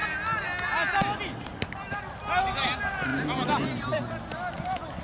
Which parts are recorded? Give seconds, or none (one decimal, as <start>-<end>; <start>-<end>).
0.0-5.0